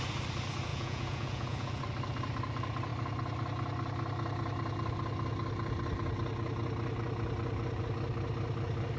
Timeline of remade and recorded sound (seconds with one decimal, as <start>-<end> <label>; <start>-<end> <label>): 0.0-0.7 recorded; 0.7-1.8 remade; 1.8-9.0 recorded